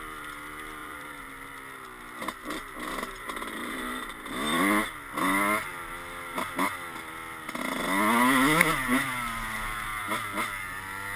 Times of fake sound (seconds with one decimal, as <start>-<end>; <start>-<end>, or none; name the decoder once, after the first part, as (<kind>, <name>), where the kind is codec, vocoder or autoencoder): 0.8-1.3 (vocoder, BigVGAN v2); 2.2-4.3